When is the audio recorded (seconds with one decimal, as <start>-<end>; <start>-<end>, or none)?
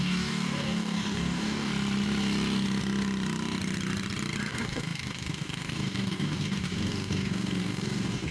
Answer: 1.7-4.5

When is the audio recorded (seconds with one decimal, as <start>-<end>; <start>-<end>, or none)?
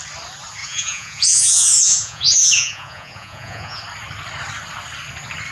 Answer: 0.0-0.6; 3.8-5.5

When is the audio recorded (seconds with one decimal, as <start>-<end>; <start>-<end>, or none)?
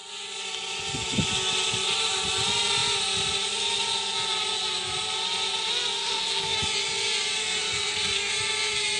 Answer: 0.0-6.0; 6.6-7.4; 8.3-9.0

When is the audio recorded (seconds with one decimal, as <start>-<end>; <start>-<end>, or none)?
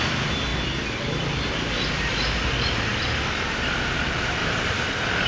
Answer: 0.0-4.4